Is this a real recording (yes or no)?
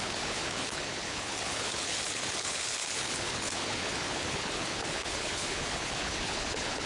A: no